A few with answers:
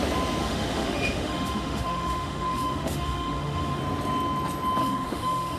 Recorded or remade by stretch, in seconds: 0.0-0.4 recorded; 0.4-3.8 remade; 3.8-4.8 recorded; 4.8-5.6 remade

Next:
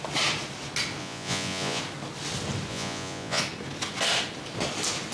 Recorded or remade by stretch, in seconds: 0.0-1.0 recorded; 1.0-1.8 remade; 1.8-2.7 recorded; 2.7-3.4 remade; 3.4-5.1 recorded

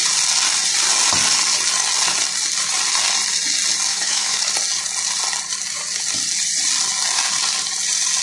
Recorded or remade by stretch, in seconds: 0.0-3.9 recorded; 3.9-4.5 remade; 4.5-8.2 recorded

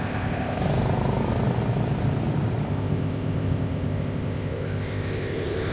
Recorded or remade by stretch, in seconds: 0.0-0.6 remade; 0.6-2.7 recorded; 2.7-5.7 remade